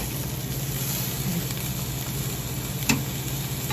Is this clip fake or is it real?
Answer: real